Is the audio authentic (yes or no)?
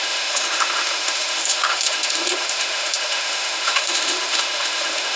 no